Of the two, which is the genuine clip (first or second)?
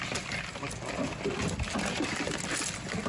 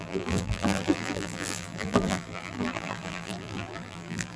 first